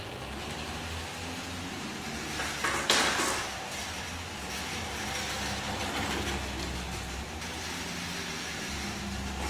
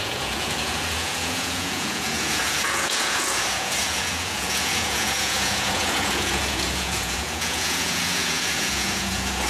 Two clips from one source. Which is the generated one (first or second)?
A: second